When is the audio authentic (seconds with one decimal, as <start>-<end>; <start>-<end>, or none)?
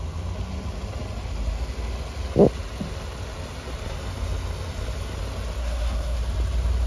0.0-5.6; 6.2-6.9